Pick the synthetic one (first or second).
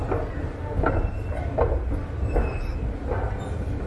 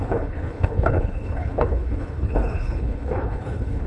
second